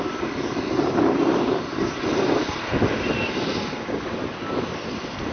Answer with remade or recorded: remade